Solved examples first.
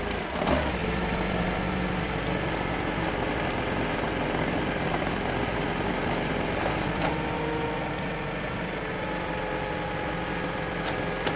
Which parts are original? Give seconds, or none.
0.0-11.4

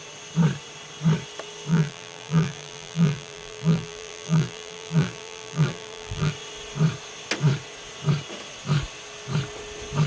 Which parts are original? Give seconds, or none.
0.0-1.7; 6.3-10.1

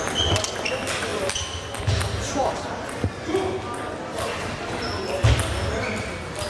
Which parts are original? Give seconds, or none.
0.0-6.5

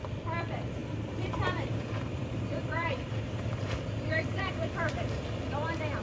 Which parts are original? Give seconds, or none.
0.0-0.8; 4.4-6.0

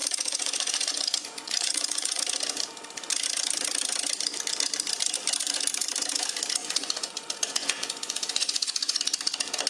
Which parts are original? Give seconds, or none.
2.2-6.6; 9.0-9.7